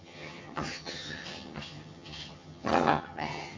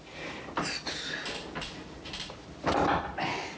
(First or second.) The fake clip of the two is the first